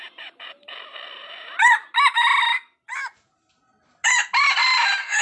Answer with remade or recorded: recorded